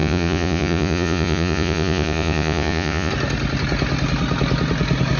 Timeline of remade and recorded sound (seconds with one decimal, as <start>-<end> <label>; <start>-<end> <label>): 0.0-3.1 remade; 3.1-5.2 recorded